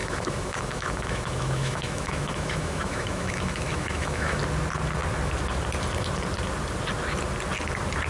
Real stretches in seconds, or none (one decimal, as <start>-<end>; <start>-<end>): 4.4-8.1

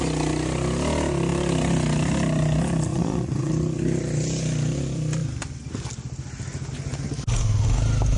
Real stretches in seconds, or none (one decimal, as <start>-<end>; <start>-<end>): 0.0-2.9; 3.5-8.2

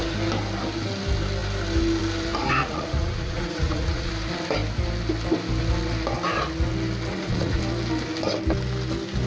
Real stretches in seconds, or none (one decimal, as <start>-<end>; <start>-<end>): 0.0-2.6; 4.1-7.1; 7.6-9.3

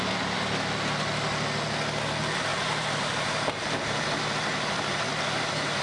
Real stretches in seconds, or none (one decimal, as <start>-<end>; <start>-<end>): 0.0-2.5